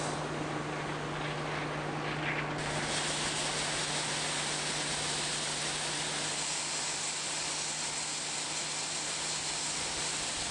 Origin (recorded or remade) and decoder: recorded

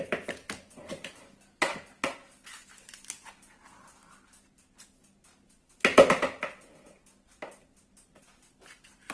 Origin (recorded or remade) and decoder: recorded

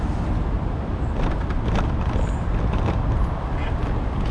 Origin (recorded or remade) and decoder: recorded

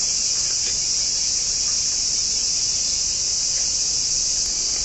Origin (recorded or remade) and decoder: recorded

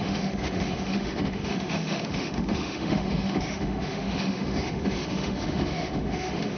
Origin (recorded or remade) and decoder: remade, autoencoder, DAC-VAE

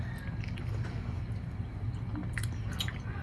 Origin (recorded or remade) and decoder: recorded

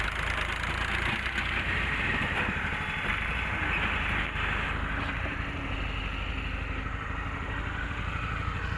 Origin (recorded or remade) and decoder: recorded